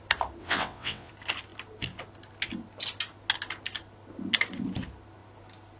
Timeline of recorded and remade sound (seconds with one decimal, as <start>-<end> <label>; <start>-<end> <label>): 0.0-0.4 recorded; 0.4-1.1 remade; 1.1-5.8 recorded